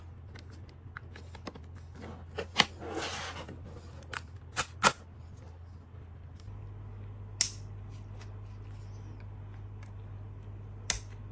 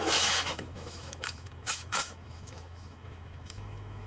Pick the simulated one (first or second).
second